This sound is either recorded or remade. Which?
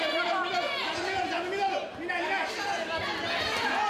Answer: recorded